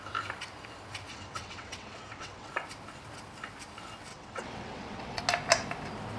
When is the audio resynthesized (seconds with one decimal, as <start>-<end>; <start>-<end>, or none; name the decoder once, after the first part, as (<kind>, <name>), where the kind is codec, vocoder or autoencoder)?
1.1-2.5 (vocoder, WaveNeXt); 4.1-5.2